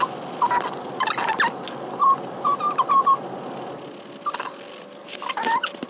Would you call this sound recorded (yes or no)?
yes